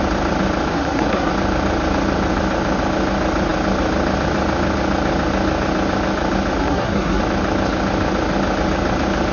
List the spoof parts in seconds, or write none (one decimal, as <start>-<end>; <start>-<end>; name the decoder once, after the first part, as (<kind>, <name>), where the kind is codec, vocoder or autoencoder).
0.7-1.3 (codec, SNAC); 6.6-7.2